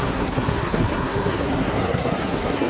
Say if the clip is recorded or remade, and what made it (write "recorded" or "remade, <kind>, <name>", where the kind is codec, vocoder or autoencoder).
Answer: remade, codec, SNAC